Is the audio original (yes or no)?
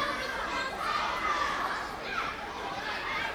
no